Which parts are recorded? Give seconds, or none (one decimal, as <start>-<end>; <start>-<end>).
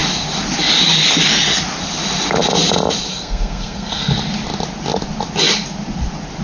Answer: 0.0-3.1; 4.1-6.4